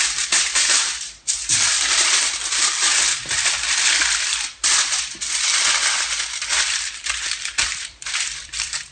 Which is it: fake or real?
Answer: fake